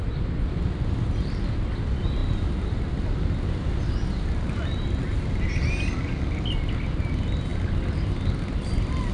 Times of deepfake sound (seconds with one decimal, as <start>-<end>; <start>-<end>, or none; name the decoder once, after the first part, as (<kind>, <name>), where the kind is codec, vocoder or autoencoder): none